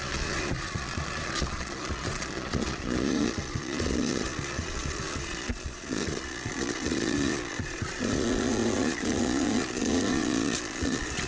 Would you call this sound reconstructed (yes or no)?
yes